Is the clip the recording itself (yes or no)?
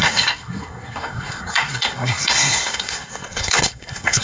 no